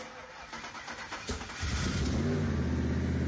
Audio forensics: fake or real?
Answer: real